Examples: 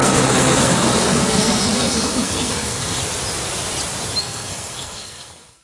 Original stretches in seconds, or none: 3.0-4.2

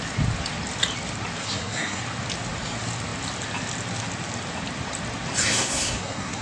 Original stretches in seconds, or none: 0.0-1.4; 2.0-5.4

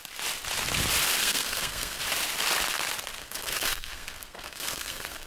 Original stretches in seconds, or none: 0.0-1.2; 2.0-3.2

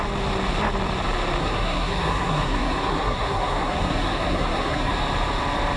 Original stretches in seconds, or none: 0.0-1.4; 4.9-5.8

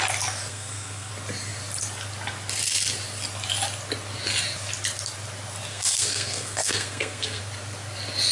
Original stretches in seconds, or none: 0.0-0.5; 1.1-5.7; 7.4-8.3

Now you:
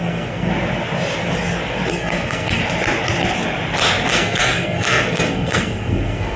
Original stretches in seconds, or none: 0.5-1.9; 2.6-4.1